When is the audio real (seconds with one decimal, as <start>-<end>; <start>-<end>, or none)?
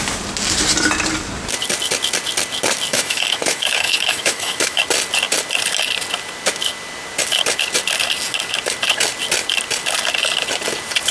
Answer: 0.0-2.9; 4.8-11.1